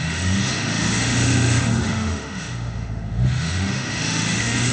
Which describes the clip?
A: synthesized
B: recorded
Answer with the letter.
A